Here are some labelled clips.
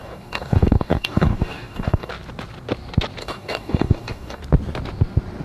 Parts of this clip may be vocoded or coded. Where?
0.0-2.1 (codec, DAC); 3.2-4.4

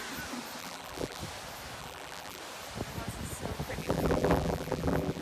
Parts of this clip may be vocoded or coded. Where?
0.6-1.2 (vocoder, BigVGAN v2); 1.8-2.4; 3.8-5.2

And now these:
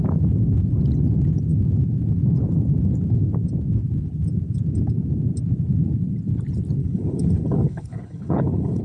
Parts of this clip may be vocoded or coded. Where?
6.8-8.8 (codec, HILCodec)

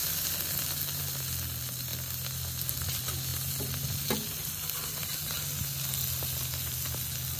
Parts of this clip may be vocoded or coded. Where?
none

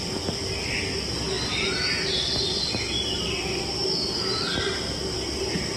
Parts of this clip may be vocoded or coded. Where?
none